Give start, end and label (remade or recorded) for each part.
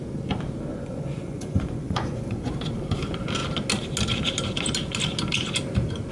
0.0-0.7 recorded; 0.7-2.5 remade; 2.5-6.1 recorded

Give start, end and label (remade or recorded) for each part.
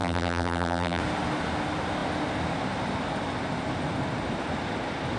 0.0-1.0 remade; 1.0-5.2 recorded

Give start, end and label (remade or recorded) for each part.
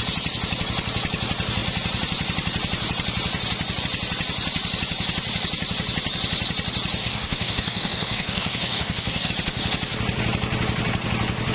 0.0-7.0 recorded; 7.0-9.3 remade; 9.3-11.5 recorded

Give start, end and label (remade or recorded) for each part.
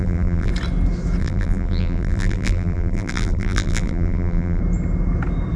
0.0-0.5 remade; 0.5-1.2 recorded; 1.2-4.6 remade; 4.6-5.6 recorded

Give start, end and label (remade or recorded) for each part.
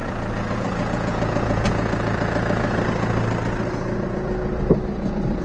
0.0-2.8 remade; 2.8-5.4 recorded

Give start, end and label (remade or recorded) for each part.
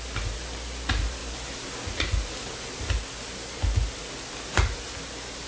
0.0-5.5 recorded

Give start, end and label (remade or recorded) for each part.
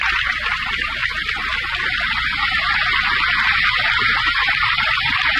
0.0-1.0 remade; 1.0-4.2 recorded; 4.2-5.4 remade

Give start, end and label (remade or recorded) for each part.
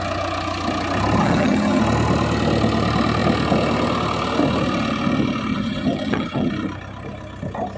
0.0-1.2 recorded; 1.2-1.8 remade; 1.8-5.5 recorded; 5.5-6.5 remade; 6.5-7.8 recorded